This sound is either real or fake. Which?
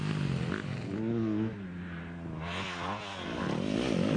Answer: real